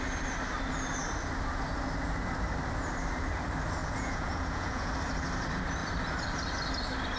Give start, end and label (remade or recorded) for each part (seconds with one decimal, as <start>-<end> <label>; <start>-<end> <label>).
0.0-3.8 recorded; 3.8-4.9 remade; 4.9-7.2 recorded